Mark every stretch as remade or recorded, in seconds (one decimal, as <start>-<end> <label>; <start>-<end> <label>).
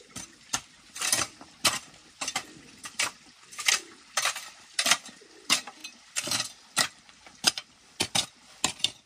0.0-5.8 remade; 5.8-6.9 recorded; 6.9-9.1 remade